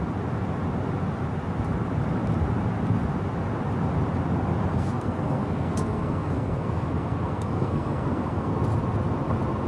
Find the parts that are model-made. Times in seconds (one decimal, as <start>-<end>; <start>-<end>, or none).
4.7-8.5